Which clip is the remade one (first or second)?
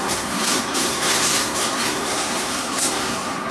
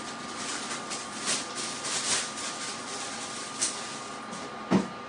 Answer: first